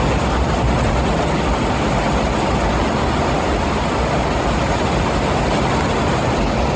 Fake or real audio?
real